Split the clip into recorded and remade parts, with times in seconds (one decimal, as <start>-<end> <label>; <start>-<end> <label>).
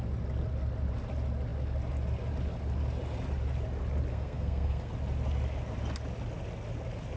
0.0-4.1 recorded; 4.1-4.9 remade; 4.9-7.2 recorded